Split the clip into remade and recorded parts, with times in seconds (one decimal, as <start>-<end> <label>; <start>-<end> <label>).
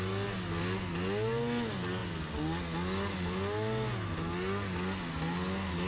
0.0-5.9 recorded